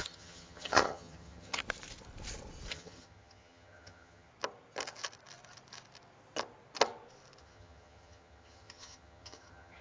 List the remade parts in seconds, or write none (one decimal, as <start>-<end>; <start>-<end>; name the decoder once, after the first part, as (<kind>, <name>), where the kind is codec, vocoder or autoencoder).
0.0-1.6 (vocoder, HiFi-GAN); 2.7-4.3; 7.4-9.8